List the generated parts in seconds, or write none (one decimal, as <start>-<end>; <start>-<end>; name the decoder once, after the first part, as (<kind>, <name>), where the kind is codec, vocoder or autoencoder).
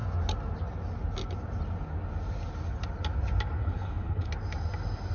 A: 3.6-4.3 (codec, HILCodec)